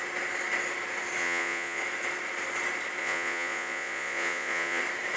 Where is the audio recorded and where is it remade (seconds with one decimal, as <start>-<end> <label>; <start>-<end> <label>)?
0.0-1.2 recorded; 1.2-1.8 remade; 1.8-3.0 recorded; 3.0-4.8 remade; 4.8-5.2 recorded